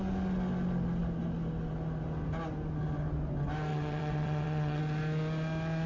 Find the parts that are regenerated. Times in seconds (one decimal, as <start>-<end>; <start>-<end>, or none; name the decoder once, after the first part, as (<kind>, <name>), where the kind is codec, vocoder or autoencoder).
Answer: 3.7-4.8 (vocoder, WaveNeXt)